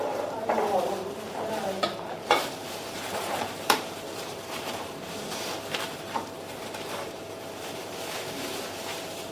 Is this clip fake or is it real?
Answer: fake